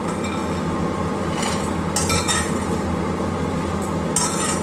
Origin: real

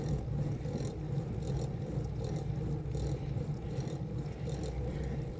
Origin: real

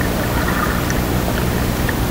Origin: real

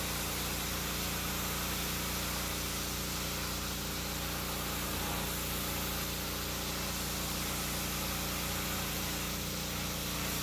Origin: real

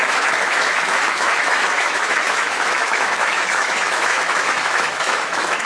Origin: fake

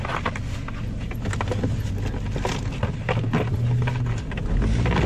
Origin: real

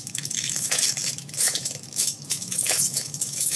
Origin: fake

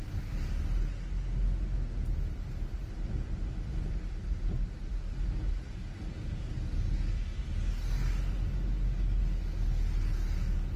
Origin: real